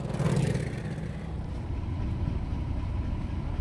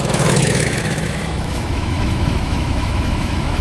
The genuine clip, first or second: first